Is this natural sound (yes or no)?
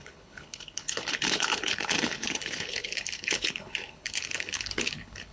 no